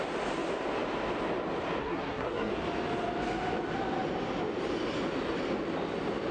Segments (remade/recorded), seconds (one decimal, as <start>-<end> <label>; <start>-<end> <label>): 0.0-1.8 recorded; 1.8-2.5 remade; 2.5-6.3 recorded